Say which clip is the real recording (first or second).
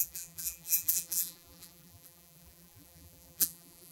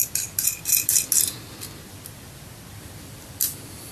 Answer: second